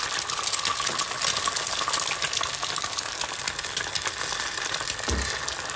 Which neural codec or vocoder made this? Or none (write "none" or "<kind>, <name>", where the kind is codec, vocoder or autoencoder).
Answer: none